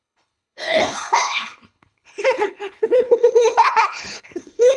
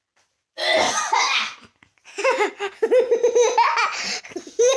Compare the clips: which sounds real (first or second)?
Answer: second